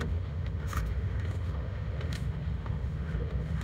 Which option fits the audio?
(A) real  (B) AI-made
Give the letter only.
B